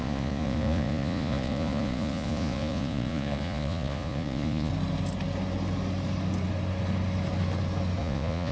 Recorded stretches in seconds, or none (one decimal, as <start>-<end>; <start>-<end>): 4.7-8.0